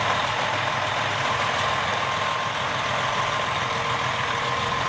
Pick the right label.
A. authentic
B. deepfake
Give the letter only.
A